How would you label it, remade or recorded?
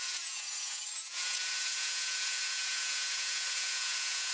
remade